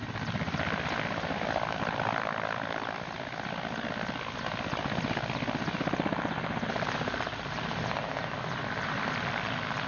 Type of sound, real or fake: real